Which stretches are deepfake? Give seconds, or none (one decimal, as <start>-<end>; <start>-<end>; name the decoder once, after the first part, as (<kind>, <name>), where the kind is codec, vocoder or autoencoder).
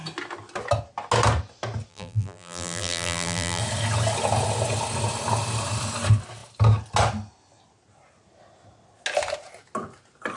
1.9-3.6 (vocoder, BigVGAN v2)